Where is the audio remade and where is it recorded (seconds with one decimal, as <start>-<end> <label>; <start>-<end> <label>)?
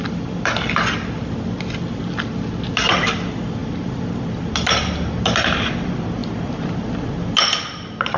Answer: 0.0-8.2 recorded